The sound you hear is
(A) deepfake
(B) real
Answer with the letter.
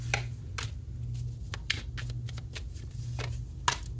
B